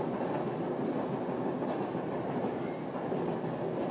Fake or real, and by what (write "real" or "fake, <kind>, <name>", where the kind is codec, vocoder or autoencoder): real